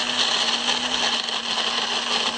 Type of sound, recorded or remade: recorded